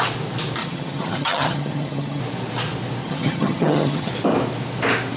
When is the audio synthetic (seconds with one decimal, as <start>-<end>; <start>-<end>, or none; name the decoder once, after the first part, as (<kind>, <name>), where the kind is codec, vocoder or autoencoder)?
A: 0.6-2.2 (vocoder, HiFi-GAN); 3.0-4.1